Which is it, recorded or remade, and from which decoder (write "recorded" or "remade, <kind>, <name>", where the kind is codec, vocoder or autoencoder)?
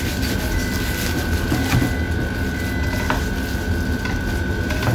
recorded